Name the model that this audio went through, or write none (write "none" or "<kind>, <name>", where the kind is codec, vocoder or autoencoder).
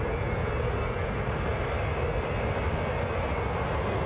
none